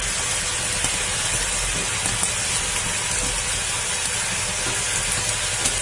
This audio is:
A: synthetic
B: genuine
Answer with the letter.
B